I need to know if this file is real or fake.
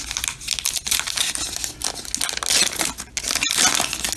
real